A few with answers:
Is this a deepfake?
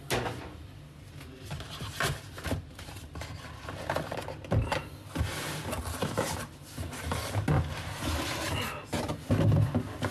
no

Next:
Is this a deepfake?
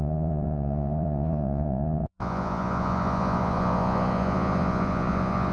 yes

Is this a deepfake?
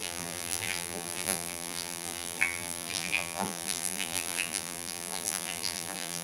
yes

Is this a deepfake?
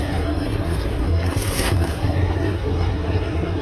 yes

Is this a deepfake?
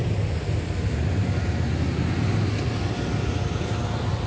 no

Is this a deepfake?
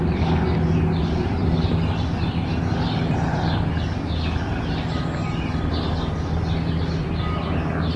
no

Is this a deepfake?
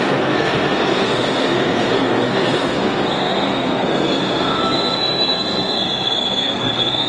yes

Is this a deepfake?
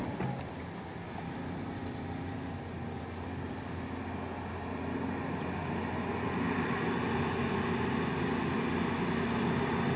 no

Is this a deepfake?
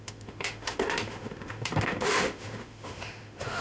yes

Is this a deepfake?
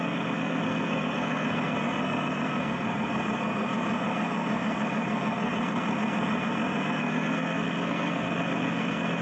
yes